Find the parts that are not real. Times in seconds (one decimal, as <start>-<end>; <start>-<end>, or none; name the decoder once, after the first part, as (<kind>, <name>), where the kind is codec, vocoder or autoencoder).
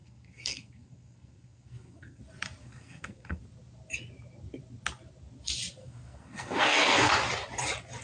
0.0-2.2 (codec, SNAC); 2.6-3.4; 5.8-7.1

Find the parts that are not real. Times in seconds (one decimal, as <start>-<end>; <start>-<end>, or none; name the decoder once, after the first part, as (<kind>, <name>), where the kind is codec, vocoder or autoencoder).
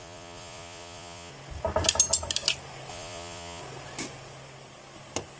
0.0-1.3 (vocoder, Vocos); 2.9-3.6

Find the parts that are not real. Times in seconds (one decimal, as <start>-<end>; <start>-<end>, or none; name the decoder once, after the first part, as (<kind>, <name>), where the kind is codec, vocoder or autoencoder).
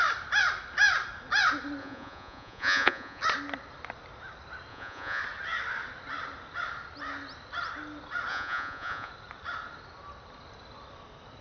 1.8-3.2 (vocoder, Vocos); 4.7-5.2; 8.3-9.1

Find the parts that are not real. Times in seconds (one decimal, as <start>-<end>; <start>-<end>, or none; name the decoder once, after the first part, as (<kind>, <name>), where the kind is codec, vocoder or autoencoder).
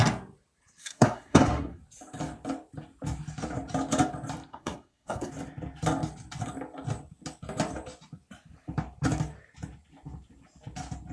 0.8-1.8 (codec, SNAC); 4.5-5.3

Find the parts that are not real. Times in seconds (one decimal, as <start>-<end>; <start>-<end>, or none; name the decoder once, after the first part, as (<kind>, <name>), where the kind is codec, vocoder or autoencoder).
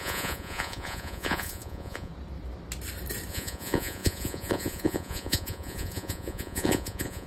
0.0-2.1 (vocoder, Vocos); 3.3-7.3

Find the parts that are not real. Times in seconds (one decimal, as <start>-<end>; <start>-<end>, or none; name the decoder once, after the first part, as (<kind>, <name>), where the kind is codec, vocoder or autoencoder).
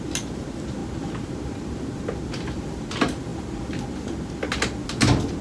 none